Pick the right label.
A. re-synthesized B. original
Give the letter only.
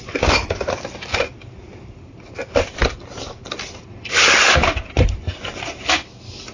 B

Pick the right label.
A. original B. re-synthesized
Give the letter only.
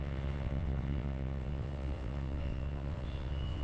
B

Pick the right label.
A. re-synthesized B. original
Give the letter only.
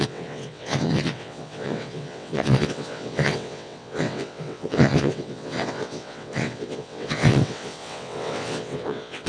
A